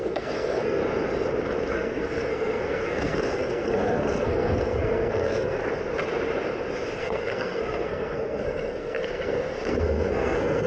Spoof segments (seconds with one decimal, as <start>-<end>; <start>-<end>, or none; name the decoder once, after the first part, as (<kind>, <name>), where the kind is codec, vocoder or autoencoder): 0.0-0.8 (codec, SNAC); 1.7-5.6; 7.0-10.7